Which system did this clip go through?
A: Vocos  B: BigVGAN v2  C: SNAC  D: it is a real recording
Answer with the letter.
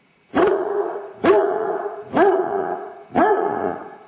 A